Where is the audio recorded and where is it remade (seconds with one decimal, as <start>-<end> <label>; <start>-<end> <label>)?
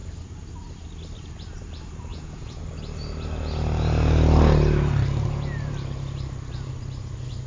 0.0-2.1 recorded; 2.1-2.6 remade; 2.6-7.5 recorded